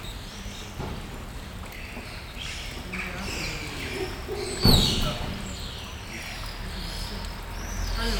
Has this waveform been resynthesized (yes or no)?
no